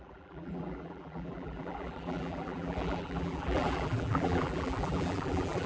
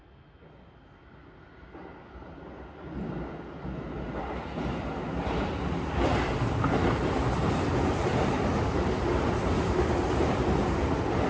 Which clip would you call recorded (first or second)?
second